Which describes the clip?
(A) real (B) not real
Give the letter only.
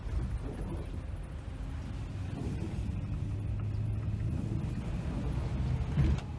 A